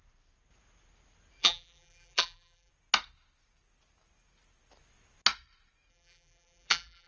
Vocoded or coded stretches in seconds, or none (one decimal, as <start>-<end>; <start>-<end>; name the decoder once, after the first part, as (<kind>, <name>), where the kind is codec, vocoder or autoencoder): 1.4-2.7 (vocoder, BigVGAN v2); 5.9-7.1